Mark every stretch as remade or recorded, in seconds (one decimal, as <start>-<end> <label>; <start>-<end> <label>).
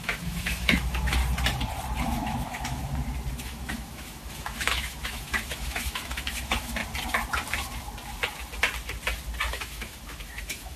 0.0-1.2 remade; 1.2-2.0 recorded; 2.0-2.8 remade; 2.8-3.3 recorded; 3.3-6.8 remade; 6.8-9.5 recorded; 9.5-10.8 remade